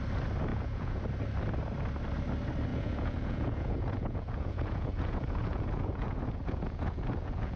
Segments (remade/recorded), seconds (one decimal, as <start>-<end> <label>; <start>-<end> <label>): 0.0-0.5 recorded; 0.5-1.0 remade; 1.0-2.7 recorded; 2.7-7.6 remade